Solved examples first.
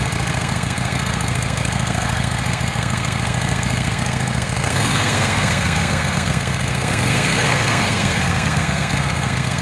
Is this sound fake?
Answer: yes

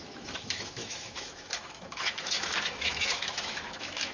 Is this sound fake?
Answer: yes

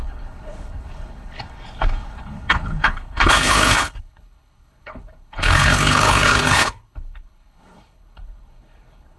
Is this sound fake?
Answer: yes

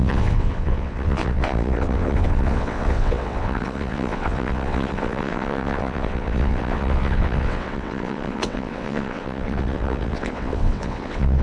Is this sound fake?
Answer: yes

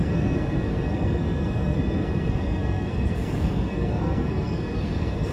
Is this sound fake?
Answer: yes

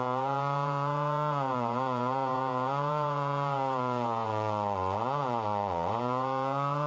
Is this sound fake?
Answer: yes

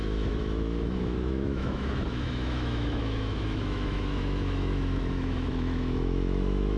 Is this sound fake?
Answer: yes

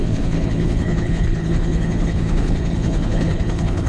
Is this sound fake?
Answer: yes